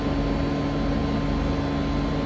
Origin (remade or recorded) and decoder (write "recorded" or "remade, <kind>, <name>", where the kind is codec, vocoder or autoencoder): recorded